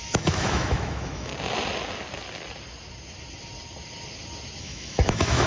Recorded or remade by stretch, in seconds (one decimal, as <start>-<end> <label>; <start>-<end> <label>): 0.0-1.3 remade; 1.3-4.6 recorded; 4.6-5.5 remade